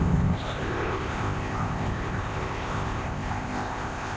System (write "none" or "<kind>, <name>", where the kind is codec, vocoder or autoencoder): codec, ZipCodec